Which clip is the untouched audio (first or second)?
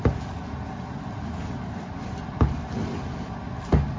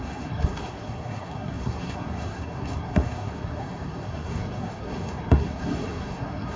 first